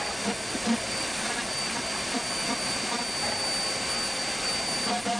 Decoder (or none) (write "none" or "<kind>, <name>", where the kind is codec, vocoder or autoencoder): none